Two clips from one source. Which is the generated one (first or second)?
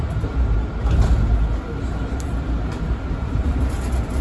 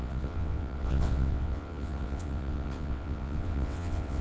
second